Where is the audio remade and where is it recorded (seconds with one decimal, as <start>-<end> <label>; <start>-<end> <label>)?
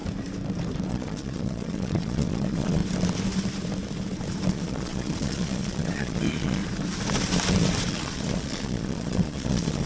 0.0-0.9 recorded; 0.9-2.8 remade; 2.8-4.5 recorded; 4.5-6.6 remade; 6.6-7.9 recorded; 7.9-9.9 remade